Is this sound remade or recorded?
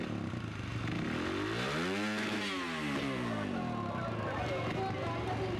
recorded